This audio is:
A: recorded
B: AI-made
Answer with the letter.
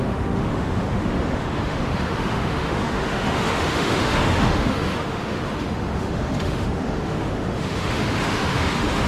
B